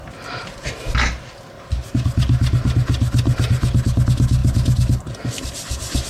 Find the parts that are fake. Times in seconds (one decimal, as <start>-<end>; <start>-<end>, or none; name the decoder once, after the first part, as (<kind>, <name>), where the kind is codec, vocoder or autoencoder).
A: none